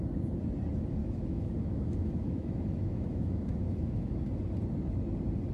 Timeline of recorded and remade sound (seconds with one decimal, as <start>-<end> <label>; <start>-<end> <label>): 0.0-1.0 recorded; 1.0-4.3 remade; 4.3-5.5 recorded